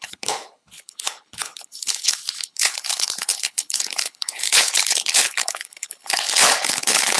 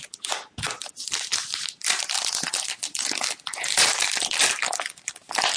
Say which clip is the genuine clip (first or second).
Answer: second